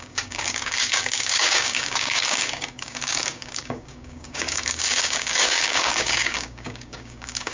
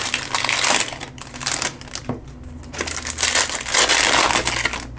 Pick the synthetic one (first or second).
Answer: first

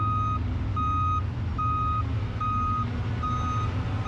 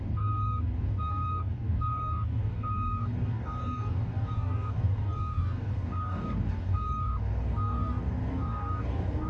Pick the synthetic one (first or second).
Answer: second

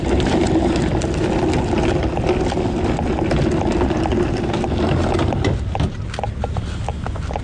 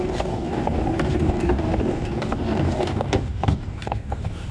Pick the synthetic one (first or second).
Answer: second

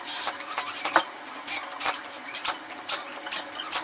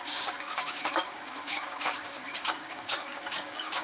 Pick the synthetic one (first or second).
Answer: second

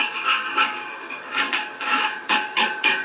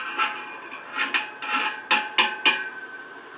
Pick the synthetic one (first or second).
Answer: first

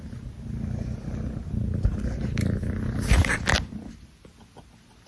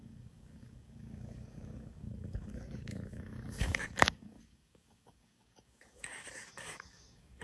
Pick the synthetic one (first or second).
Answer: second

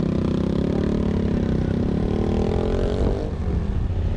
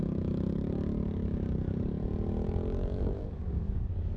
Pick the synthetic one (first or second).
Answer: second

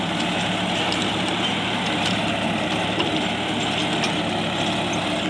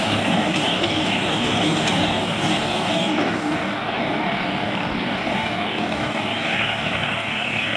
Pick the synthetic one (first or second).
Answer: second